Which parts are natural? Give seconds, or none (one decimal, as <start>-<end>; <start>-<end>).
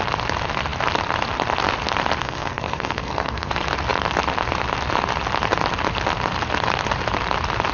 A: 0.0-2.2; 3.5-7.7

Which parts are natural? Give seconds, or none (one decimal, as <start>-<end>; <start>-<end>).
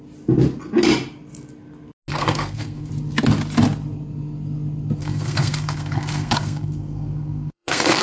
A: 0.0-2.1; 2.9-5.0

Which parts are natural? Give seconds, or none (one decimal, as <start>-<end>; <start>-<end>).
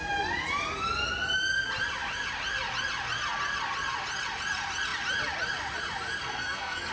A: 0.0-6.2